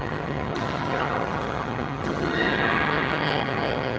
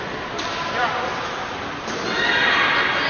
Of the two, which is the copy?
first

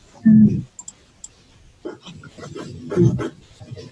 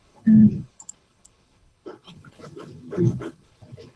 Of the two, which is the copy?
second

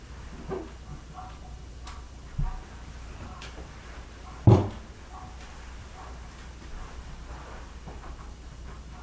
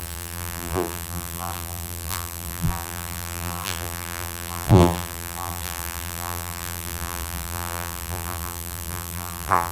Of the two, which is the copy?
second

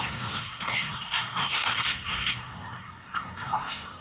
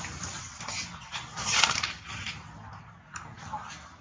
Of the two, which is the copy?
first